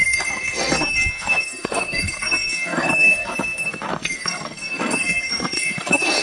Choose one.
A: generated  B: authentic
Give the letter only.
A